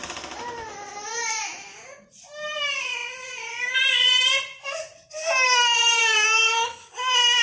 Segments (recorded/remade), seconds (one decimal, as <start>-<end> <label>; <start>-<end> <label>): 0.0-6.0 recorded; 6.0-7.0 remade; 7.0-7.4 recorded